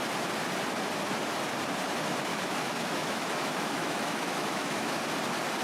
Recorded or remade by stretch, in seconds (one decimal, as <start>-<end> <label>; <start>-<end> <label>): 0.0-2.3 recorded; 2.3-5.0 remade; 5.0-5.6 recorded